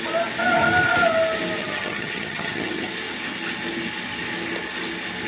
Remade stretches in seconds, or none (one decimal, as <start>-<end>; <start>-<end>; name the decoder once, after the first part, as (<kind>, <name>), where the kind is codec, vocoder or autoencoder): 1.6-2.9 (vocoder, HiFi-GAN)